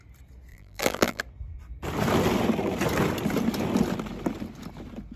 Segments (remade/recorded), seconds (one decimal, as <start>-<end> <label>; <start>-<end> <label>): 0.0-0.5 recorded; 0.5-1.2 remade; 1.2-5.2 recorded